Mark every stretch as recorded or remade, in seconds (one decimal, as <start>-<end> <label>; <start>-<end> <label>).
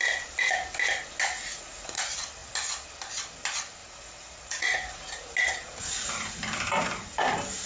0.0-1.2 recorded; 1.2-2.0 remade; 2.0-3.8 recorded; 3.8-5.1 remade; 5.1-7.7 recorded